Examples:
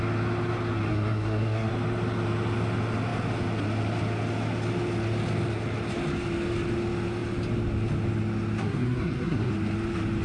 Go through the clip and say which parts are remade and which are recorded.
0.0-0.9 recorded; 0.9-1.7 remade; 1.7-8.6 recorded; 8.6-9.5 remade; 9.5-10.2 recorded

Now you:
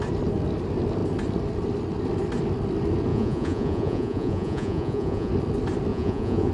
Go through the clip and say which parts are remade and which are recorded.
0.0-3.1 recorded; 3.1-5.3 remade; 5.3-5.9 recorded; 5.9-6.5 remade

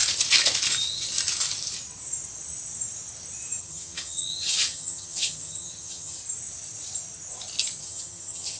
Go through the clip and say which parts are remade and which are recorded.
0.0-3.6 recorded; 3.6-6.2 remade; 6.2-7.8 recorded; 7.8-8.6 remade